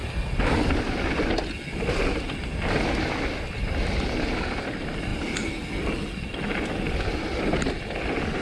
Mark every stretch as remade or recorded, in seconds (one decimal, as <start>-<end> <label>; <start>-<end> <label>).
0.0-8.4 recorded